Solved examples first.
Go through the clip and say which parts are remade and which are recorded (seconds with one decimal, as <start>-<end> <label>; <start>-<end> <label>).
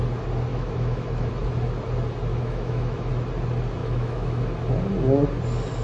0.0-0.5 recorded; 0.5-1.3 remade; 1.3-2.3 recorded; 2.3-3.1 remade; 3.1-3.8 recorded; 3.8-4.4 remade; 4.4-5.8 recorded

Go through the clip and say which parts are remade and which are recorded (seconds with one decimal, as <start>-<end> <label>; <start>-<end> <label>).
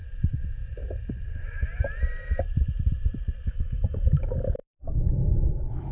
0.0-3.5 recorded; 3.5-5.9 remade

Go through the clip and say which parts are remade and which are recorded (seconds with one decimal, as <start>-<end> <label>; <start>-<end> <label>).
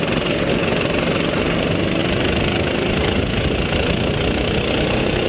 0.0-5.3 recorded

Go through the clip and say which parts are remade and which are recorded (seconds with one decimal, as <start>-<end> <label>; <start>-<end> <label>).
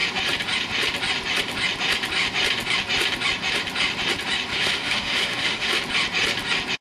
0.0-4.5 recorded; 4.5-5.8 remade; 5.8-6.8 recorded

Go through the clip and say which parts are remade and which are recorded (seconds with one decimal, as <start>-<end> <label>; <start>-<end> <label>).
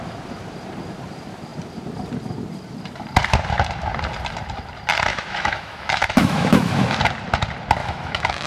0.0-5.1 recorded; 5.1-7.0 remade; 7.0-7.8 recorded; 7.8-8.5 remade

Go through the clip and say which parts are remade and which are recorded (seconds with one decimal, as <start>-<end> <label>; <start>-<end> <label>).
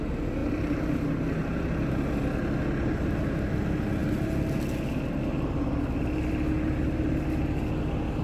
0.0-8.2 recorded